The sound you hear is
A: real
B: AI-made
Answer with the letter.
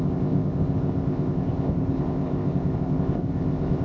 B